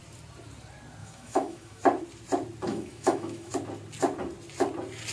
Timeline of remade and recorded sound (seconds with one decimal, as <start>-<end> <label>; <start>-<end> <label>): 0.0-1.0 recorded; 1.0-1.8 remade; 1.8-2.7 recorded; 2.7-3.5 remade; 3.5-5.1 recorded